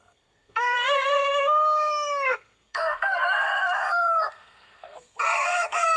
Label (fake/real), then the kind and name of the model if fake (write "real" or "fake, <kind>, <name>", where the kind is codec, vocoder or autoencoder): fake, codec, SNAC